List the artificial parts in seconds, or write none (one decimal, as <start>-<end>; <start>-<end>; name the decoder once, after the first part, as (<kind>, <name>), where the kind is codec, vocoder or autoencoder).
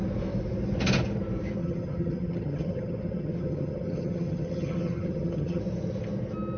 1.6-5.6 (vocoder, HiFi-GAN)